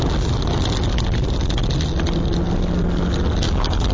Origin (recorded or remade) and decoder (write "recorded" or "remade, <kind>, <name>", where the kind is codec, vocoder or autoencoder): recorded